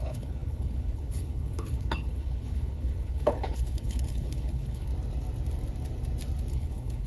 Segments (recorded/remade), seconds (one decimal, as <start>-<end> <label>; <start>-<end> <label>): 0.0-4.9 remade; 4.9-6.5 recorded; 6.5-7.1 remade